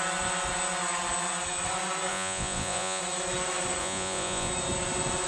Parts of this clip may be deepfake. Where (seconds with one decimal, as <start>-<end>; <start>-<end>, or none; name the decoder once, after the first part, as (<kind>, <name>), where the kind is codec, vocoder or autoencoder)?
2.1-3.0 (vocoder, Vocos); 3.8-4.5